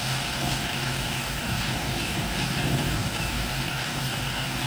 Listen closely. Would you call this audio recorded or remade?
remade